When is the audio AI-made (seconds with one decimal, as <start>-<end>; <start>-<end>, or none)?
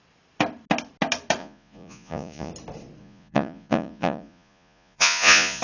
1.4-2.5; 3.0-5.6